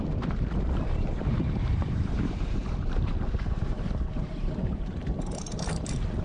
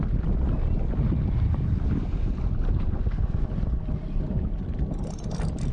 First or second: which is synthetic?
first